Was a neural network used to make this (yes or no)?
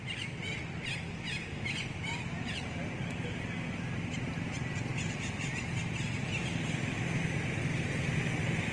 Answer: no